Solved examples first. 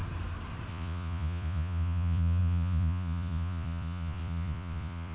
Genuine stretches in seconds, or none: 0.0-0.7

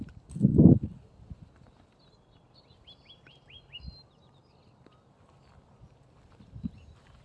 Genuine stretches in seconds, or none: 0.0-7.2

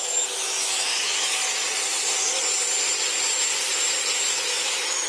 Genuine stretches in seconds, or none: 1.4-4.3